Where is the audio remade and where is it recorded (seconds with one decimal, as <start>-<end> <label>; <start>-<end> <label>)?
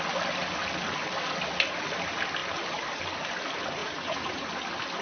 0.0-3.8 recorded; 3.8-4.5 remade; 4.5-5.0 recorded